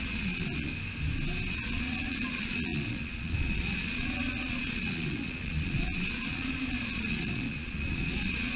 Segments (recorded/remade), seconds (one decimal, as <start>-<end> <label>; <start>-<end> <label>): 0.0-0.7 remade; 0.7-1.5 recorded; 1.5-8.6 remade